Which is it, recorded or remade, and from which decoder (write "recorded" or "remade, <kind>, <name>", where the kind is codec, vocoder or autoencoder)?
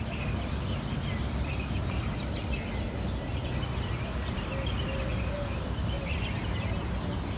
recorded